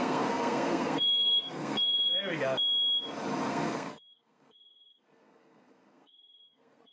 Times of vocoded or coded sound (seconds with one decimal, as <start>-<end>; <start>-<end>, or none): 0.0-2.1; 3.5-6.9